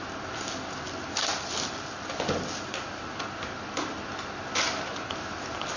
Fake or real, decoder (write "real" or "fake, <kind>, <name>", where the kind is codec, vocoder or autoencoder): real